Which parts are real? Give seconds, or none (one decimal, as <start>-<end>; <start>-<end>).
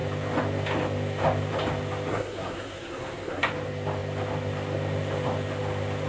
0.0-2.1; 3.5-6.1